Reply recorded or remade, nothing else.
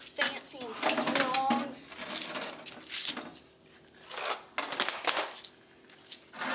recorded